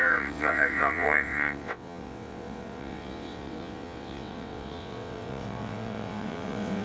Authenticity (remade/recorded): remade